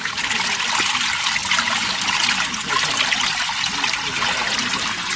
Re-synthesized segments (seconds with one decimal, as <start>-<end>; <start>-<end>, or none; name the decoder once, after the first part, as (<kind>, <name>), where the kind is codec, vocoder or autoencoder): none

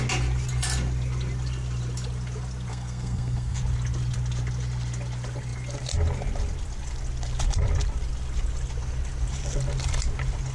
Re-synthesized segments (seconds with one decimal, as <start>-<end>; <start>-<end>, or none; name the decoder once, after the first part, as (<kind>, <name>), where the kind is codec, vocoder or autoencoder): 2.7-3.6 (codec, SNAC)